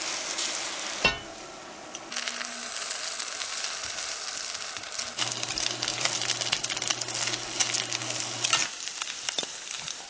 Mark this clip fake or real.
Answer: real